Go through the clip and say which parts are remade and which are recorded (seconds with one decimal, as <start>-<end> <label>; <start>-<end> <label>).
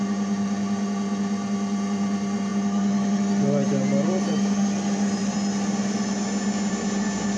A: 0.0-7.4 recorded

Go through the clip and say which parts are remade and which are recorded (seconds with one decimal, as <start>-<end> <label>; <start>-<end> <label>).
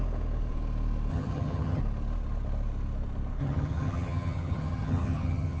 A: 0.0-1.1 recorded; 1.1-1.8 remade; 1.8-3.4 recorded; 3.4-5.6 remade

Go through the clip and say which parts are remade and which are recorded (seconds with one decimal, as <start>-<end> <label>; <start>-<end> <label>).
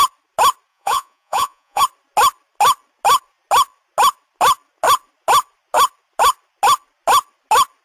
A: 0.0-0.7 recorded; 0.7-1.8 remade; 1.8-7.8 recorded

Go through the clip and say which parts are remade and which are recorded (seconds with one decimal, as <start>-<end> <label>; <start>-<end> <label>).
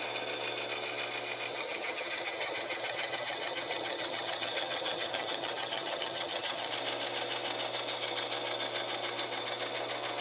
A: 0.0-1.5 recorded; 1.5-6.7 remade; 6.7-10.2 recorded